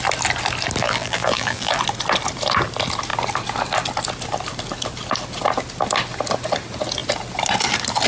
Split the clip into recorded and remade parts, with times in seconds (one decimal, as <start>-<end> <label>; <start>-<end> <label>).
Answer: 0.0-0.8 recorded; 0.8-1.8 remade; 1.8-8.1 recorded